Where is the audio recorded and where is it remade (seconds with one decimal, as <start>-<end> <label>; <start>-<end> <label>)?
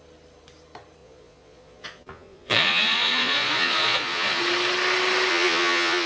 0.0-1.0 recorded; 1.0-4.4 remade; 4.4-5.3 recorded; 5.3-6.1 remade